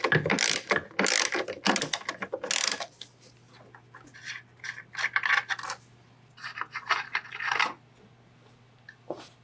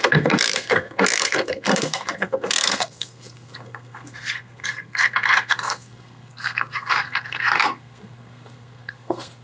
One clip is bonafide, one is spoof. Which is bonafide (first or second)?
first